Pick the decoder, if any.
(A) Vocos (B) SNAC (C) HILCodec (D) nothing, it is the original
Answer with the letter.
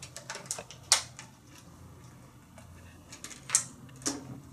D